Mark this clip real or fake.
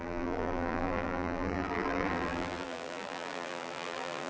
fake